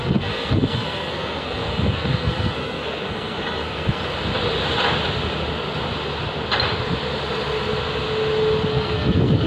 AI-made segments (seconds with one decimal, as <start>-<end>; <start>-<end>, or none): 0.0-4.0; 8.7-9.5